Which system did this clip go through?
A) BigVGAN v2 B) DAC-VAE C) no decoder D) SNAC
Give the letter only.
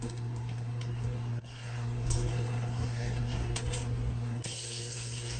D